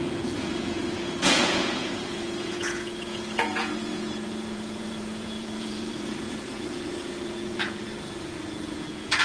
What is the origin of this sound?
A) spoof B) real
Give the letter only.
A